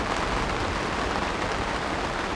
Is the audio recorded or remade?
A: recorded